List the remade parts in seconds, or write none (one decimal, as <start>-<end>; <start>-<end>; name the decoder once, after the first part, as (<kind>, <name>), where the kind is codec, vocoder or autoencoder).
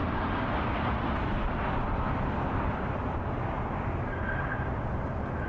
none